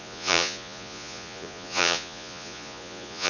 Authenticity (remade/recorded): remade